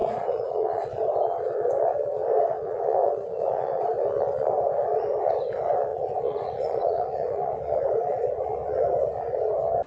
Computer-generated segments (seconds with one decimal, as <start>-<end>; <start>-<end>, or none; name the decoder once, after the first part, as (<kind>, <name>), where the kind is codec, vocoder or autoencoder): 0.0-0.9 (vocoder, Vocos); 2.5-3.8; 5.9-7.6

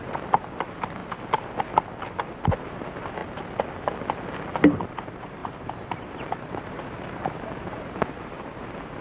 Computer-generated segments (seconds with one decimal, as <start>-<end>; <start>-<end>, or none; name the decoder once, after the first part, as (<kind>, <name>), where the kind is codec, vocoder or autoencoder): 0.0-1.0 (vocoder, BigVGAN v2); 2.6-3.2; 4.9-9.0